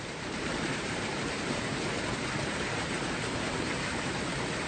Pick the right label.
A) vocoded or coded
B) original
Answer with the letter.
A